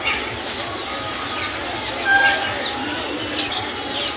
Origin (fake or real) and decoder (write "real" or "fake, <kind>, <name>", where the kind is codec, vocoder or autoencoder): real